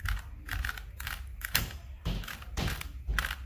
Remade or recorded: remade